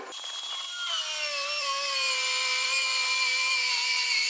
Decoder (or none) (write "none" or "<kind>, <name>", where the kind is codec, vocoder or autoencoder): vocoder, BigVGAN v2